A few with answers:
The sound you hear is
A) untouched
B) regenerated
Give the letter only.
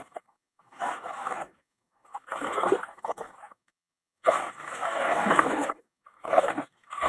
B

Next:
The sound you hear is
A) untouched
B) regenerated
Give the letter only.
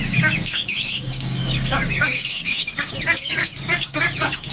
B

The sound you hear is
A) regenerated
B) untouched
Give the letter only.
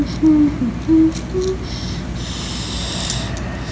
B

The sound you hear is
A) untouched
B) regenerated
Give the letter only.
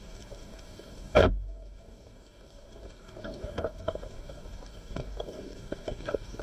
B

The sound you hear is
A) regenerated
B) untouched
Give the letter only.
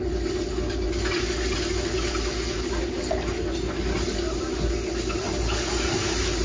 B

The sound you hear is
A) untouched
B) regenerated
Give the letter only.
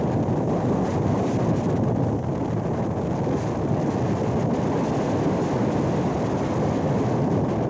A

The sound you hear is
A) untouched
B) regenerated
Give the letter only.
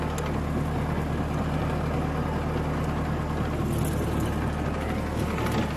A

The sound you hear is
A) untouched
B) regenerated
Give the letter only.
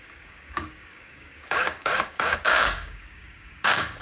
B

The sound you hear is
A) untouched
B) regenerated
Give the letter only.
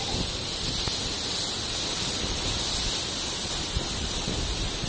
A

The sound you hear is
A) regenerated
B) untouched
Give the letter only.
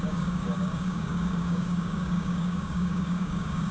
A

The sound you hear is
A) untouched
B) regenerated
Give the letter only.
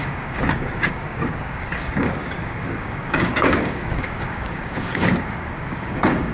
B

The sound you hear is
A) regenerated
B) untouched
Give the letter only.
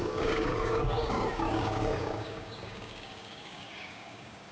A